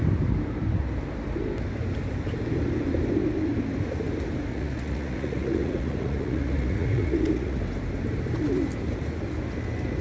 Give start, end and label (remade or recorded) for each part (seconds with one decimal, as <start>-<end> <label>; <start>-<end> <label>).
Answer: 0.0-4.5 recorded; 4.5-7.6 remade; 7.6-10.0 recorded